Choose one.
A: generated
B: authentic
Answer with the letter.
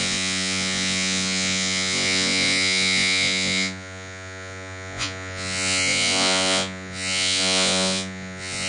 A